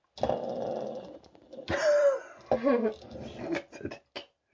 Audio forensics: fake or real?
real